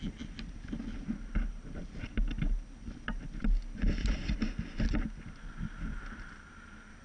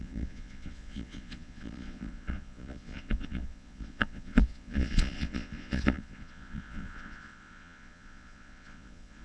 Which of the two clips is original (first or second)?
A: first